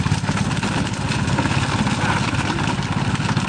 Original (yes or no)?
yes